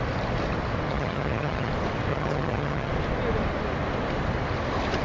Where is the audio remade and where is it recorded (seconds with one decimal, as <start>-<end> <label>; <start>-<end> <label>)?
0.0-0.9 recorded; 0.9-1.7 remade; 1.7-2.1 recorded; 2.1-2.9 remade; 2.9-5.0 recorded